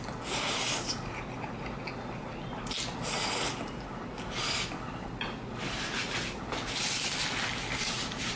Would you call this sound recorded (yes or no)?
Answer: yes